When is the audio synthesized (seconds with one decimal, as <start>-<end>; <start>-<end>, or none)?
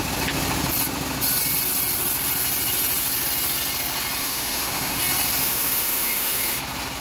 4.2-5.0; 5.4-6.6